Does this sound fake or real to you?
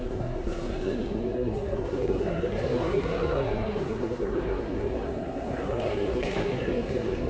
fake